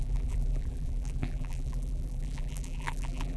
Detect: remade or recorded remade